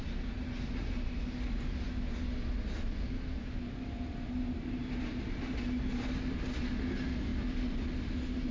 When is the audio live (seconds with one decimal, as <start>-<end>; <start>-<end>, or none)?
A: 0.0-8.5